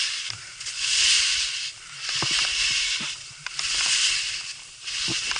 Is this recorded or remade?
recorded